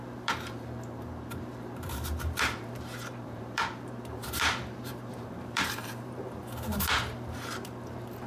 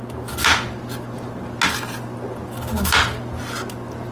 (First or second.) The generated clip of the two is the first